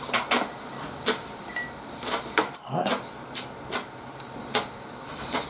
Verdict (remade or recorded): recorded